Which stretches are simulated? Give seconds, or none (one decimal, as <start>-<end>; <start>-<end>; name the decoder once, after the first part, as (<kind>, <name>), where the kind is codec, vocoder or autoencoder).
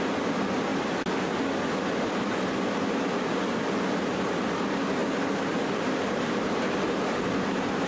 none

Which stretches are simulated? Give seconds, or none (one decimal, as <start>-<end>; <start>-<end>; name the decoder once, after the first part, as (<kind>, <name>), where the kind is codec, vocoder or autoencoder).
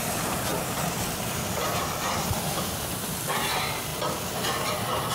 0.0-3.9 (vocoder, BigVGAN v2)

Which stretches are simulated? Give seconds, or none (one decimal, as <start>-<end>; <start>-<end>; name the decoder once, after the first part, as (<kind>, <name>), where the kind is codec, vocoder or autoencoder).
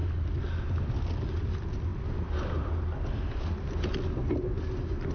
0.7-1.9 (vocoder, BigVGAN v2)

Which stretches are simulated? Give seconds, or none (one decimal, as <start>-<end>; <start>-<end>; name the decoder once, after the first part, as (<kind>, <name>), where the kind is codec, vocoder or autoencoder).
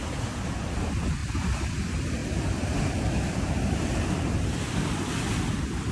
1.2-1.7 (vocoder, BigVGAN v2); 2.2-5.1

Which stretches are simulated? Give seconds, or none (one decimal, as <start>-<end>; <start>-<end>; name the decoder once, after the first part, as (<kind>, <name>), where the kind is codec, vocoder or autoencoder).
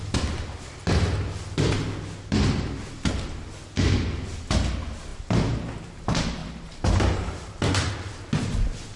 6.4-7.9 (vocoder, BigVGAN v2)